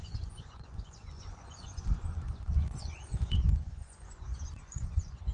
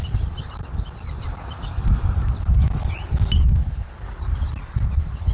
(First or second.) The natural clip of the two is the second